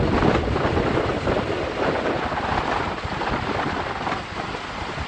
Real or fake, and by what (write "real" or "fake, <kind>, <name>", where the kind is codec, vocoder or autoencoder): real